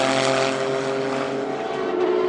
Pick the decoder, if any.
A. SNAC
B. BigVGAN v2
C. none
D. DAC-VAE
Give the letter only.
C